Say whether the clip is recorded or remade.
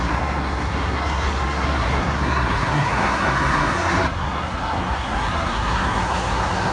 remade